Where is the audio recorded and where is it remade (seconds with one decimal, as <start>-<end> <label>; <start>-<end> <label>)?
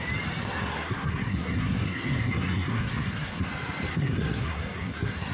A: 0.0-0.4 recorded; 0.4-3.5 remade; 3.5-3.9 recorded; 3.9-5.3 remade